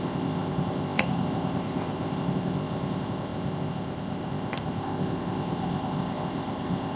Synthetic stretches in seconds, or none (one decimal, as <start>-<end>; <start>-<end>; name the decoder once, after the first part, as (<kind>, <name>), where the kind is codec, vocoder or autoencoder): 0.0-7.0 (codec, ZipCodec)